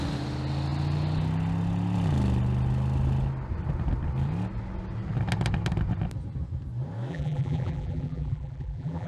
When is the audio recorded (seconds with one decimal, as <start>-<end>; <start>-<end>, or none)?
0.0-7.1